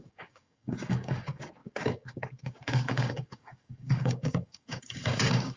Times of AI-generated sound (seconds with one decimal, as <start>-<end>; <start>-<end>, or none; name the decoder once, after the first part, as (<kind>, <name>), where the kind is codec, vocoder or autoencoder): 0.0-5.6 (codec, DAC)